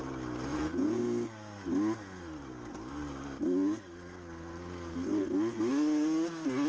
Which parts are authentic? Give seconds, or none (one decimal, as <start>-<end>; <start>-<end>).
0.0-0.5; 1.0-6.7